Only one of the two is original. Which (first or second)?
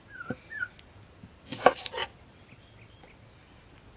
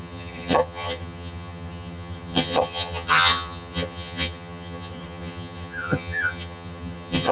first